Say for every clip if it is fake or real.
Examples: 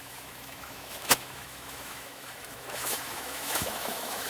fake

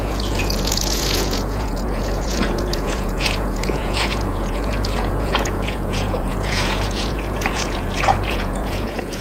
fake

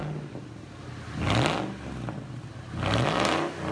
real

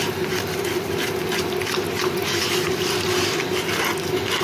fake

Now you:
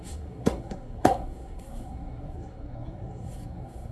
fake